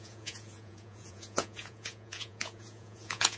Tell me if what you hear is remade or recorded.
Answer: remade